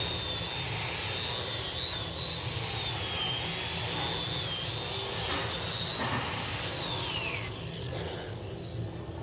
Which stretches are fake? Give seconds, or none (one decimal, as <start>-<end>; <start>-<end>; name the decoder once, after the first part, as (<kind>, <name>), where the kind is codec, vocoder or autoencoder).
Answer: none